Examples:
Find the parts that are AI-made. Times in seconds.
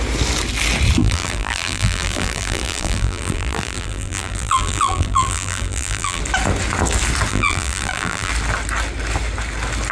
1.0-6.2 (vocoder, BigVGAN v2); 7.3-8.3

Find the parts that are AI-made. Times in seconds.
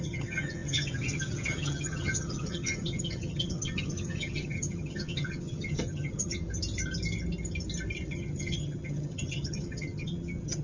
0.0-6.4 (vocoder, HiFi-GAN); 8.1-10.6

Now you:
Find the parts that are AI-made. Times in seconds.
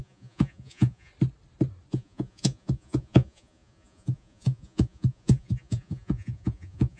0.0-1.1 (vocoder, Vocos); 1.9-7.0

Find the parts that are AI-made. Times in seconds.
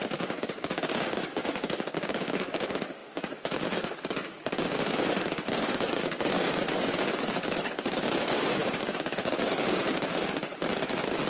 0.0-10.5 (codec, DAC)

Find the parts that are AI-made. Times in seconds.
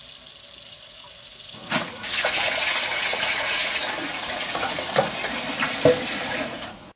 0.7-4.9 (vocoder, Vocos); 6.2-7.0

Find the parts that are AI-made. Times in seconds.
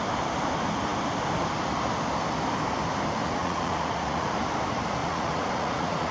3.2-4.3 (vocoder, Vocos); 5.0-6.1